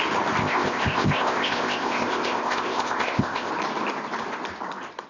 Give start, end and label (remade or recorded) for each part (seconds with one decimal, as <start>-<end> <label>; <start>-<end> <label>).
0.0-0.4 recorded; 0.4-3.5 remade; 3.5-5.1 recorded